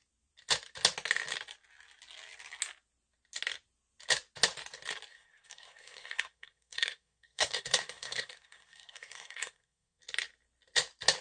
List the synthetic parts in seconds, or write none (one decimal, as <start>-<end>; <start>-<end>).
5.1-10.0